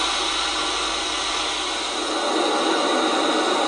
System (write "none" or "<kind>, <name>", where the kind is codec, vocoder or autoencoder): none